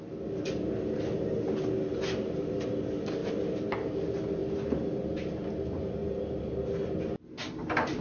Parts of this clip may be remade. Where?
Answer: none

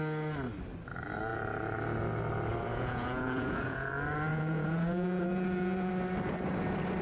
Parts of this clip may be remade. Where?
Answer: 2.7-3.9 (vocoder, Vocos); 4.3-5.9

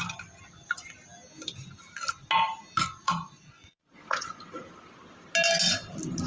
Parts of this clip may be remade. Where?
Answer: 2.9-4.4 (vocoder, Vocos)

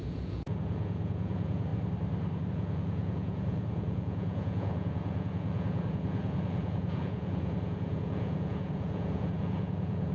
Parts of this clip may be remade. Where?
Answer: 0.0-1.7 (vocoder, Vocos); 2.5-10.1